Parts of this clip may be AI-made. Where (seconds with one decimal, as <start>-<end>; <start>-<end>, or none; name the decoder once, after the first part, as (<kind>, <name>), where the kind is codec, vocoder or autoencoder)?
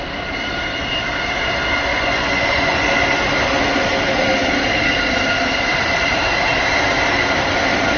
1.9-2.9 (vocoder, Vocos)